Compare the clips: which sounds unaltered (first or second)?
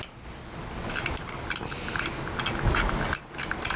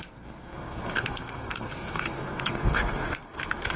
first